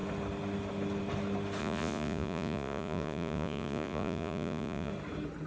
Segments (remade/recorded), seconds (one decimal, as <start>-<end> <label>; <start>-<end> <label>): 0.0-1.6 recorded; 1.6-4.9 remade; 4.9-5.5 recorded